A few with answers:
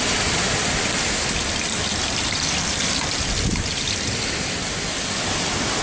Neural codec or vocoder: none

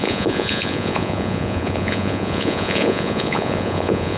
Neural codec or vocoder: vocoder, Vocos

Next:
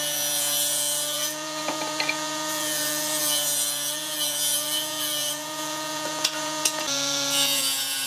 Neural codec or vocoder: vocoder, Vocos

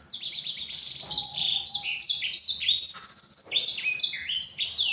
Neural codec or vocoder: none